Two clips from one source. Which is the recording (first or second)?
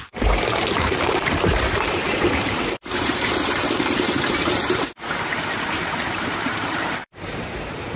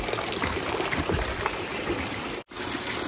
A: second